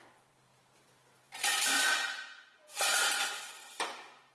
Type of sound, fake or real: fake